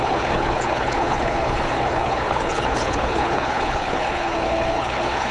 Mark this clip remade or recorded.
remade